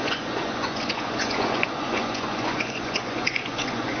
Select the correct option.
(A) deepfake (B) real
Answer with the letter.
A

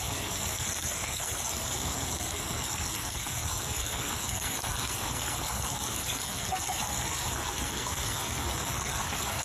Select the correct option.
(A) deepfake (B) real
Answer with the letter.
A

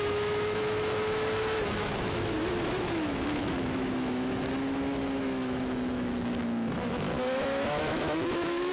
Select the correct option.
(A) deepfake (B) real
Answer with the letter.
A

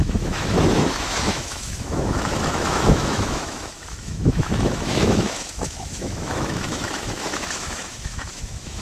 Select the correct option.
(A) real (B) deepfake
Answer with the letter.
B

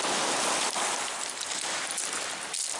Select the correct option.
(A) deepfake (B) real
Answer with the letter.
B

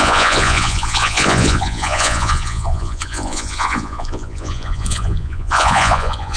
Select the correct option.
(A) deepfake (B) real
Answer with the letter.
A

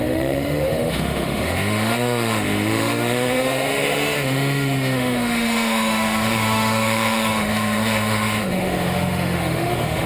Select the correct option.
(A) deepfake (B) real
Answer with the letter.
A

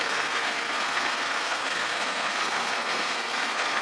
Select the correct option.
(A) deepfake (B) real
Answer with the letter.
A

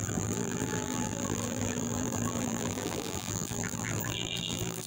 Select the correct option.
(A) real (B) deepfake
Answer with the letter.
B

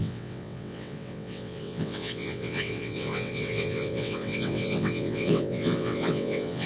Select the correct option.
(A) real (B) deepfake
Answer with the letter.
B